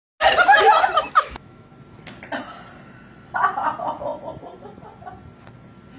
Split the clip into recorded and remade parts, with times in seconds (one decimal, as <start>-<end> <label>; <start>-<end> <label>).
0.0-1.0 recorded; 1.0-1.7 remade; 1.7-6.0 recorded